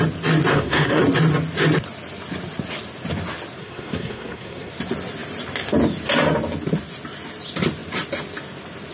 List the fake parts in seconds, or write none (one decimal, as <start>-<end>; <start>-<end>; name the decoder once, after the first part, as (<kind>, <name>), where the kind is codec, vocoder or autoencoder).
0.5-1.0 (codec, SNAC); 3.6-4.7